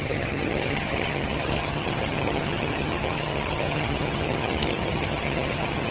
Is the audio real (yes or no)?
no